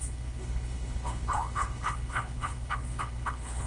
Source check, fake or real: fake